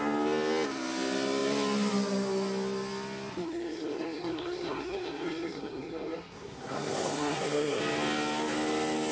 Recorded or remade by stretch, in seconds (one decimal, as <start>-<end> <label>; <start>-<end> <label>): 0.0-3.4 recorded; 3.4-7.8 remade; 7.8-9.1 recorded